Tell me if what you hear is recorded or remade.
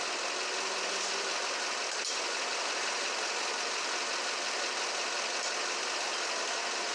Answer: recorded